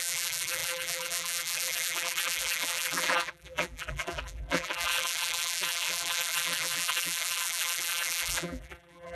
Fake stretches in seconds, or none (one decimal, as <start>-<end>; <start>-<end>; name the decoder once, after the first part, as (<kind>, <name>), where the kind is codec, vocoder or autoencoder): 0.0-9.2 (vocoder, BigVGAN v2)